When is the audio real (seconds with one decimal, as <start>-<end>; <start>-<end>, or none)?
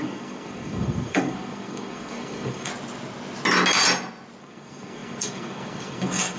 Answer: 2.7-4.4